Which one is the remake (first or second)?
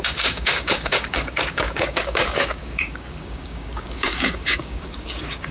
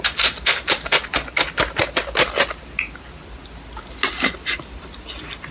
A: first